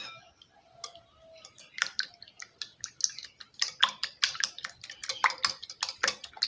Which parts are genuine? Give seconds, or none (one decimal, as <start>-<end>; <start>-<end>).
0.0-6.5